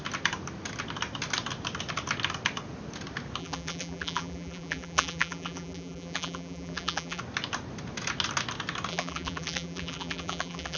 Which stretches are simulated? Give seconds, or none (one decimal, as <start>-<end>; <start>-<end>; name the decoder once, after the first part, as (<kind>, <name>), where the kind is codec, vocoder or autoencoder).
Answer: 3.4-7.2 (vocoder, BigVGAN v2); 8.9-10.8